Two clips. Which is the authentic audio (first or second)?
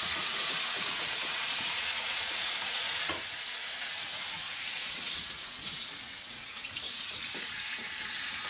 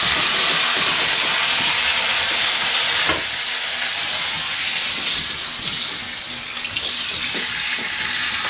second